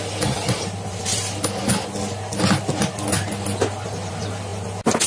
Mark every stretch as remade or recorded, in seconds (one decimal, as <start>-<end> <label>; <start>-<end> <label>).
0.0-5.1 recorded